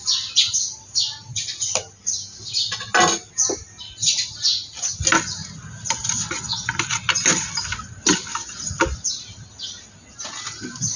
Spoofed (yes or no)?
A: no